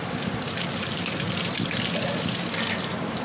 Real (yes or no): yes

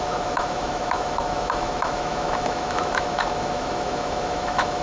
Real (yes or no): no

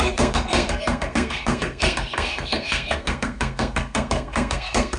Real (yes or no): no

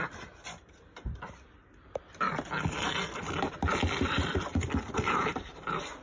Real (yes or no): yes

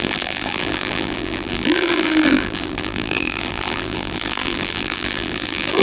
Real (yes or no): no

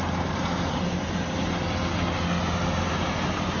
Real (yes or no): yes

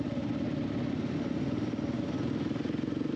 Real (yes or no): yes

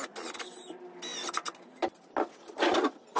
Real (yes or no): yes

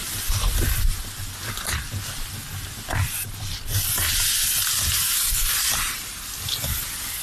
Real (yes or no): yes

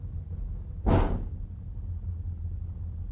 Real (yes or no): yes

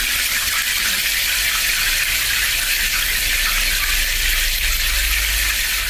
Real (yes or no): yes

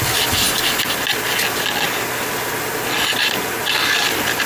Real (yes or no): yes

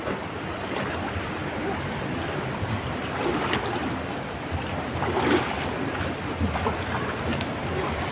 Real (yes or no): yes